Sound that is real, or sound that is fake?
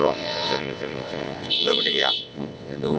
fake